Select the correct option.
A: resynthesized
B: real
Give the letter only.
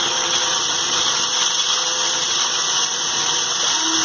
B